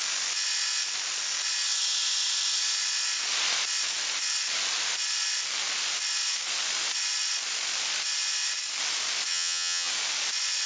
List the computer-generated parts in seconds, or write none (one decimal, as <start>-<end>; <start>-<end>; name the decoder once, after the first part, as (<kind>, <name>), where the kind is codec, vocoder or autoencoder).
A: 9.3-9.9 (vocoder, HiFi-GAN)